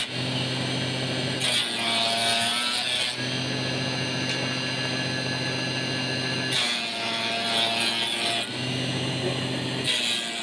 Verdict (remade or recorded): recorded